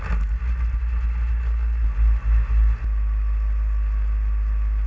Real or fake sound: real